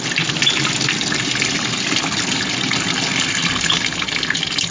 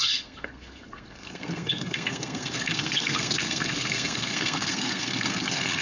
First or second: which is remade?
second